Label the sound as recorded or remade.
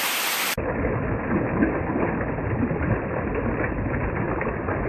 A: recorded